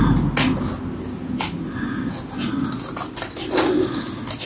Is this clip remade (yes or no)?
no